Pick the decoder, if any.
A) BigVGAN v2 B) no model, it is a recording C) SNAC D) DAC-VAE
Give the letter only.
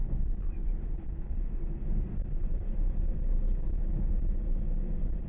A